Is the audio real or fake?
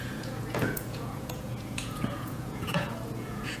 fake